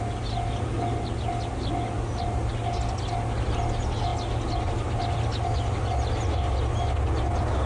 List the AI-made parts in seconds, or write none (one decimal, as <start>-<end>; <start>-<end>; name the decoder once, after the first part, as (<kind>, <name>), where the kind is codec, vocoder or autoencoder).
none